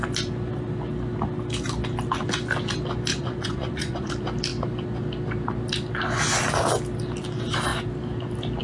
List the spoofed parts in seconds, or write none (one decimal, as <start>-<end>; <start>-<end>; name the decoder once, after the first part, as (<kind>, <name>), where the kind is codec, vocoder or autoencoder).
3.1-4.1 (vocoder, Vocos)